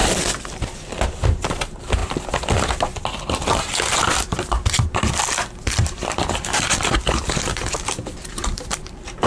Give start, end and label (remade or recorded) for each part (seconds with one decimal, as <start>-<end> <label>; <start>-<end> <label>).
0.0-2.0 remade; 2.0-4.5 recorded; 4.5-9.3 remade